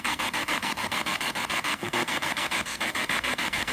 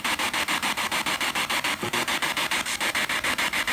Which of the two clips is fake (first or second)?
first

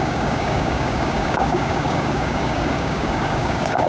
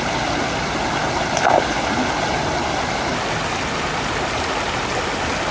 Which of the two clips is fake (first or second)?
first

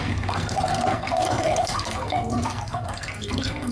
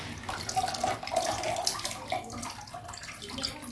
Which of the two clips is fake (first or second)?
first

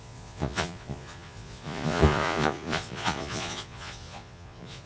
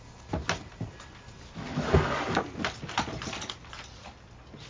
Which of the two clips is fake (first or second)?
first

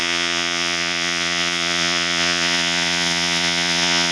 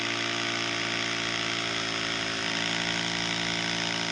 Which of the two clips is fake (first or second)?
first